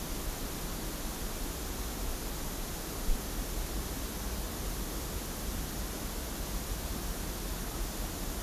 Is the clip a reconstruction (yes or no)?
no